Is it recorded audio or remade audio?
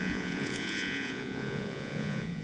remade